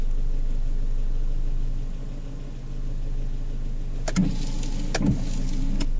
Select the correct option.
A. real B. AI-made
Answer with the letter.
A